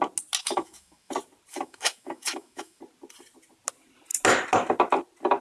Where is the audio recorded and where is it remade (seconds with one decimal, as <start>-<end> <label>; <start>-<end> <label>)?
0.0-0.4 recorded; 0.4-1.1 remade; 1.1-1.5 recorded; 1.5-2.8 remade; 2.8-5.4 recorded

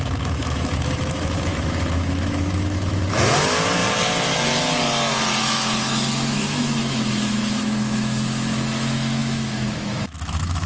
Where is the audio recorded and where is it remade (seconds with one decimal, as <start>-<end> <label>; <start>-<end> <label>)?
0.0-3.8 remade; 3.8-5.4 recorded; 5.4-10.7 remade

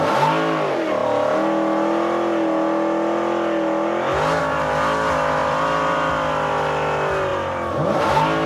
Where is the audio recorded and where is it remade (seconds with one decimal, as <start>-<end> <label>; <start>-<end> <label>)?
0.0-5.4 recorded; 5.4-6.1 remade; 6.1-7.3 recorded; 7.3-8.0 remade; 8.0-8.5 recorded

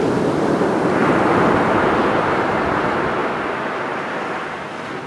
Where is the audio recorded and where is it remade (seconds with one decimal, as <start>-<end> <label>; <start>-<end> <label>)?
0.0-5.1 recorded

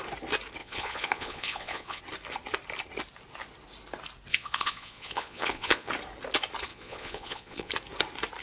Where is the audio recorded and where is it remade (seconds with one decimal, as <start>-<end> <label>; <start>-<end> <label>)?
0.0-0.6 recorded; 0.6-2.0 remade; 2.0-4.3 recorded; 4.3-5.9 remade; 5.9-6.7 recorded; 6.7-7.7 remade; 7.7-8.4 recorded

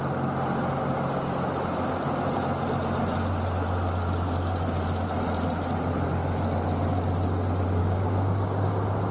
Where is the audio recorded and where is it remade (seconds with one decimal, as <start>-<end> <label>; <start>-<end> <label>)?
0.0-7.8 recorded; 7.8-9.1 remade

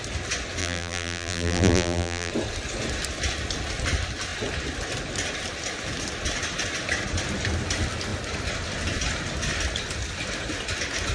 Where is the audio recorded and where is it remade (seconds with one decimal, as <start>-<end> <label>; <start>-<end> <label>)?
0.0-0.6 recorded; 0.6-2.3 remade; 2.3-11.1 recorded